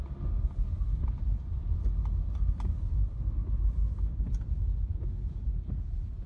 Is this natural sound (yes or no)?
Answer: yes